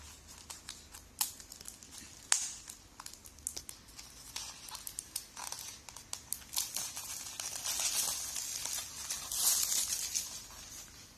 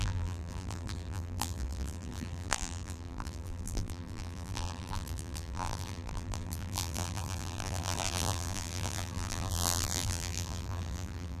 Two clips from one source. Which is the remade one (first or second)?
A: second